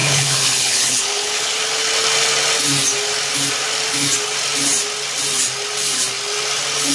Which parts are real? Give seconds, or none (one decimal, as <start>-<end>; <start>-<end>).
1.5-6.9